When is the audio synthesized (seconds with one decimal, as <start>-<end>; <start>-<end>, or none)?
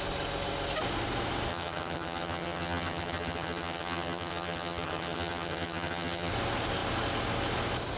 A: 1.5-6.3